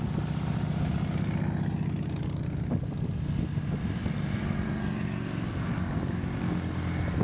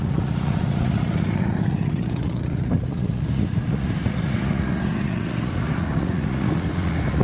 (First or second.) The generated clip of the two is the second